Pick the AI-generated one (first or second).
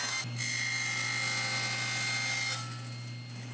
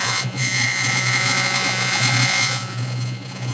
second